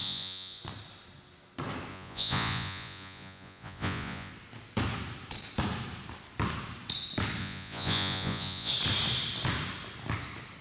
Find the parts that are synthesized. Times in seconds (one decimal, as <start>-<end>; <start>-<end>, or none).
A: 0.0-0.6; 1.9-4.3; 7.4-8.7